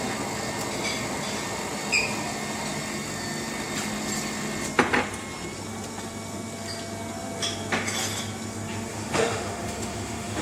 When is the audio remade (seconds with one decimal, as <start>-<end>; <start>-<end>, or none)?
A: 8.9-10.4